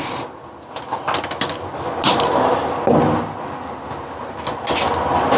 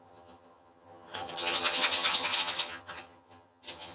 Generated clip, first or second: second